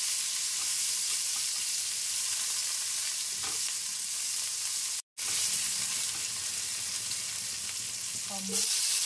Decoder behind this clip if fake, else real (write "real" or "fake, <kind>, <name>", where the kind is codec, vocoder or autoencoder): real